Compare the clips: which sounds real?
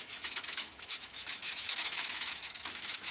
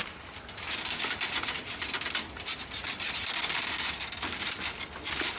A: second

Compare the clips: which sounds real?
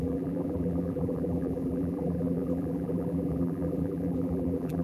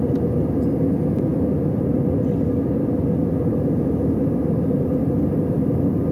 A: second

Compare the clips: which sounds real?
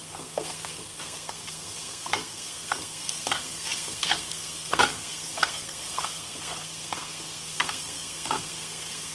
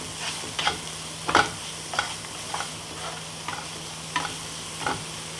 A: second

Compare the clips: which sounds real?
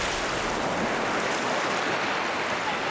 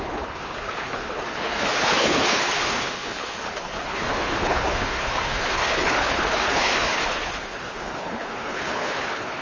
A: first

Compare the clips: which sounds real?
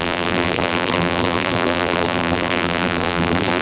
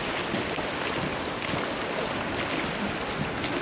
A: second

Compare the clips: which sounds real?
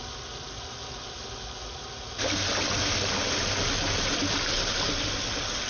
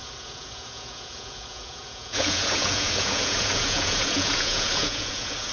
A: first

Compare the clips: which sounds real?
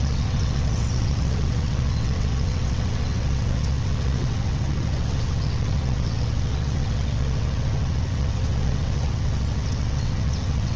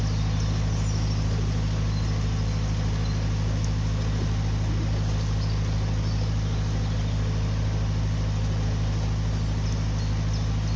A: second